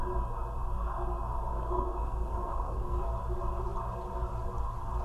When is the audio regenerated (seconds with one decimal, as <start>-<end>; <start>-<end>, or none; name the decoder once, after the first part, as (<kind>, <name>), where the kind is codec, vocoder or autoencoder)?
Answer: 1.5-3.0 (codec, SNAC)